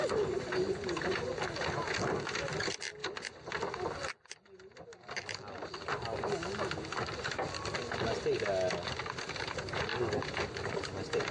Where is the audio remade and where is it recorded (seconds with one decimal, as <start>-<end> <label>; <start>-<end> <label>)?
0.0-11.3 recorded